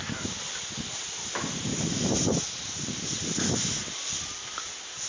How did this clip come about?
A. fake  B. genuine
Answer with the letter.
B